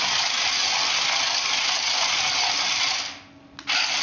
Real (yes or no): yes